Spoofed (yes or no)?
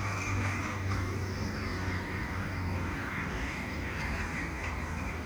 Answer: yes